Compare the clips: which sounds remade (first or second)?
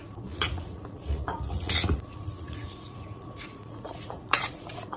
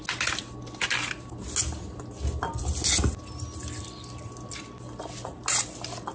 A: first